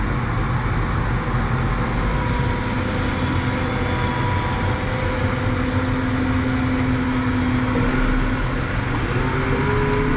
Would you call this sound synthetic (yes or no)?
no